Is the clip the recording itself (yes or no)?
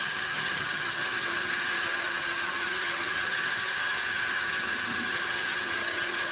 no